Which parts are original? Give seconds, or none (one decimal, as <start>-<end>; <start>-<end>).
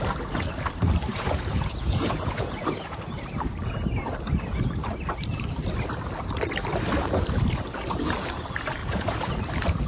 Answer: 0.0-1.1; 3.0-8.8; 9.3-9.9